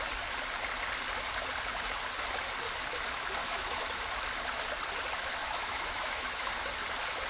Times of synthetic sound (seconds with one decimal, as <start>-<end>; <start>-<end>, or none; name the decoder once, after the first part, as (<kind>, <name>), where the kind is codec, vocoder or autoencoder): 3.4-4.0 (autoencoder, DAC-VAE); 5.4-6.5